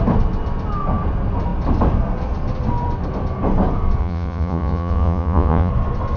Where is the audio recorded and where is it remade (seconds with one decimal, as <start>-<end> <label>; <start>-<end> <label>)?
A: 0.0-4.0 recorded; 4.0-5.7 remade; 5.7-6.2 recorded